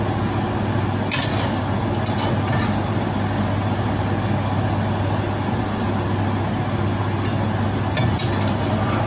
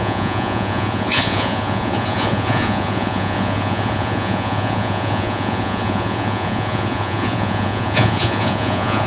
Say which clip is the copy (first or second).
second